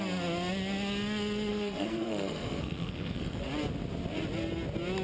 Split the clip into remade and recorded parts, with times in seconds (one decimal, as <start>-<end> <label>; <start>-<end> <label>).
0.0-1.5 recorded; 1.5-3.4 remade; 3.4-5.0 recorded